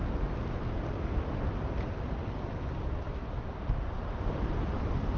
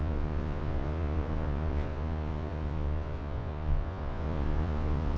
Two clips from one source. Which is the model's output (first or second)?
second